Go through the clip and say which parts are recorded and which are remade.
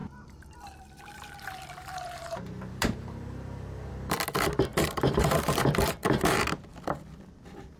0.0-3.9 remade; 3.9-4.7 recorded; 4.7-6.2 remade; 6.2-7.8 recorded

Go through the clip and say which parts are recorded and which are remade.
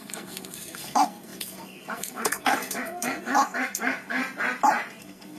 0.0-4.2 remade; 4.2-5.0 recorded; 5.0-5.4 remade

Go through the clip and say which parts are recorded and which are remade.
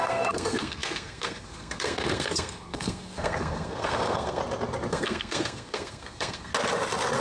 0.0-4.4 remade; 4.4-4.9 recorded; 4.9-6.5 remade; 6.5-7.2 recorded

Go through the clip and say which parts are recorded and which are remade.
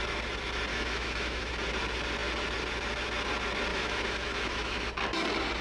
0.0-0.7 recorded; 0.7-1.5 remade; 1.5-3.7 recorded; 3.7-4.9 remade; 4.9-5.6 recorded